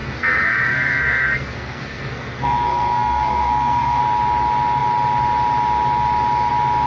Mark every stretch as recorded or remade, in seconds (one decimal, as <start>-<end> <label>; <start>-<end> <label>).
0.0-4.0 remade; 4.0-6.9 recorded